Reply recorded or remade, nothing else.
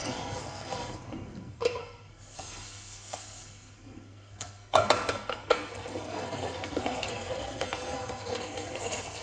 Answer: remade